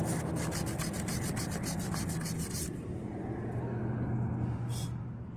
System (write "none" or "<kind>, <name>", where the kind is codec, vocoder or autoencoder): none